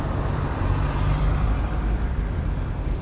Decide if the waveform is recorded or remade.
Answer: remade